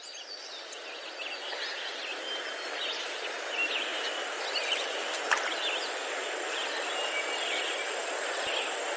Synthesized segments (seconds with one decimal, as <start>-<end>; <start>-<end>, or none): none